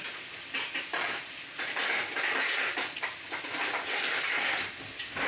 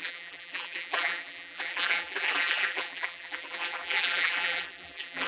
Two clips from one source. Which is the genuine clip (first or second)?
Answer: first